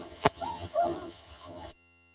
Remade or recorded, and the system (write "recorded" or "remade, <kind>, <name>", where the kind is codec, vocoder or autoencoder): remade, vocoder, HiFi-GAN